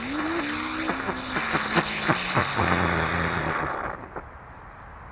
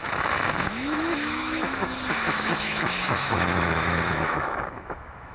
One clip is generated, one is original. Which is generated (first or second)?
second